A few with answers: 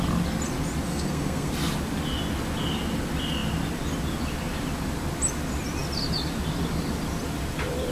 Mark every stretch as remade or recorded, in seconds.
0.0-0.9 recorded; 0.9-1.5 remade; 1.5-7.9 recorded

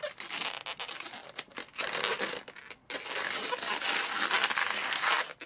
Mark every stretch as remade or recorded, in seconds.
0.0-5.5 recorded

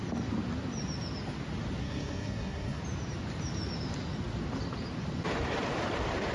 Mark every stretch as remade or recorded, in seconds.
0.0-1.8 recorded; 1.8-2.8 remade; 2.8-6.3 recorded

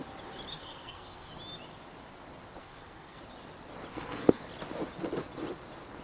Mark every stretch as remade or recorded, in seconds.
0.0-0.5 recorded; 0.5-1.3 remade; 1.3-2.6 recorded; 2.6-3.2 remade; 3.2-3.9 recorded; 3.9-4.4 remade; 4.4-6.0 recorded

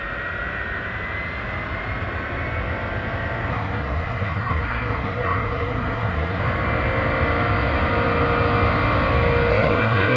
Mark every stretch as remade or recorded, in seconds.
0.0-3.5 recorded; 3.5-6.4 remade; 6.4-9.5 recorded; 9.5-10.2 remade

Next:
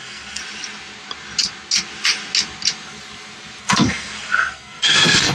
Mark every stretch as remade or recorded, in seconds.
0.0-0.4 remade; 0.4-3.6 recorded; 3.6-5.3 remade

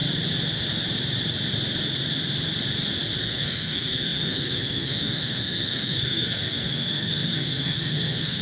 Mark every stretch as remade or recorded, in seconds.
0.0-3.2 recorded; 3.2-8.4 remade